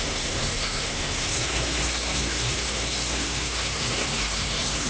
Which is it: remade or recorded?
remade